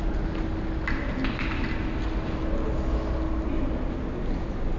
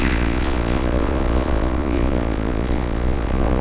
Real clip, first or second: first